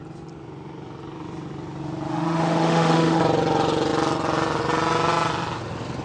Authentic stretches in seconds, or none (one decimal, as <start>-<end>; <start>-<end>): 0.0-2.1; 3.2-6.0